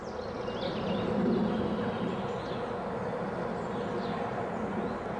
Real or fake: real